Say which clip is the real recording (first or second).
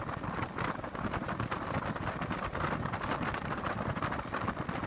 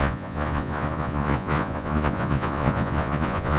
first